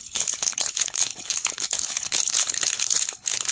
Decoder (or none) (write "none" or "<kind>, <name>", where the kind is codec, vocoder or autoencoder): codec, HILCodec